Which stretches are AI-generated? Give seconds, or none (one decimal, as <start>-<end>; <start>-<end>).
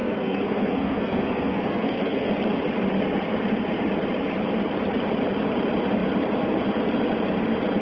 0.0-2.3